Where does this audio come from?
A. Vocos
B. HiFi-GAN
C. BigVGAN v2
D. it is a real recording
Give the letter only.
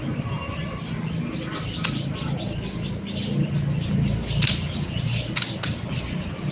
D